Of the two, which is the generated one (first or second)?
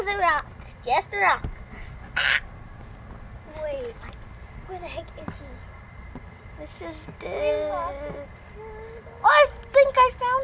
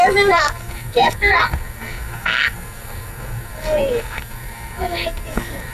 second